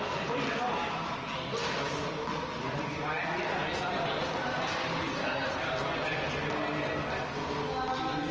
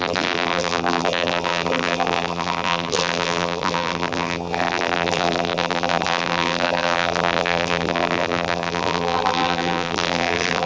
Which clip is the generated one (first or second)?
second